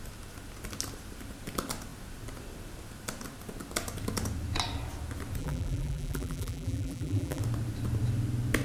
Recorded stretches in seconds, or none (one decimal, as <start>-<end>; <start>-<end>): 0.0-5.4; 7.4-8.6